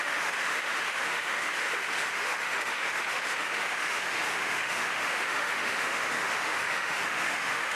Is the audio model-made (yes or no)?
yes